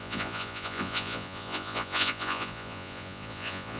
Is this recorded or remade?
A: remade